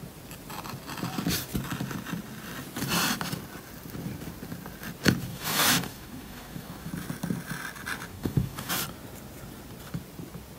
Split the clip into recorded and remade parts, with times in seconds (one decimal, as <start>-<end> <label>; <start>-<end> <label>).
0.0-5.3 recorded; 5.3-6.9 remade; 6.9-8.1 recorded; 8.1-8.7 remade; 8.7-10.6 recorded